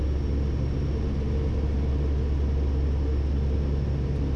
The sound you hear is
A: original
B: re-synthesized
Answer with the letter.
A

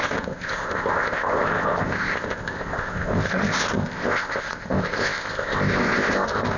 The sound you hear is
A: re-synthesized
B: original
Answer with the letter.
A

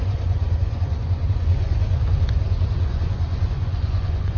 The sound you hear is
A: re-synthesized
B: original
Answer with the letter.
A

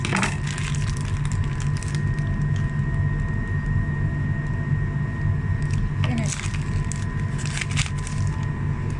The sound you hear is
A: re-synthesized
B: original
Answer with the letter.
B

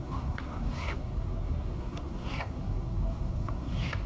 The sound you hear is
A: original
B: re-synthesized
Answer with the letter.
B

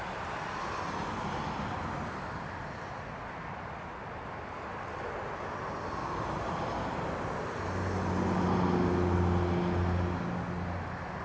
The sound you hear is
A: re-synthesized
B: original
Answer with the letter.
B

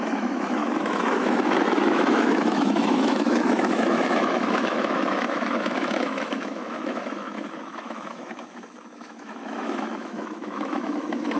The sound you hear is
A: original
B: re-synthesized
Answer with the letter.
B